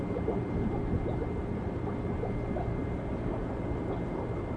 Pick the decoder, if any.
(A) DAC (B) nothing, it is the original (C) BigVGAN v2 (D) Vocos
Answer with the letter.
B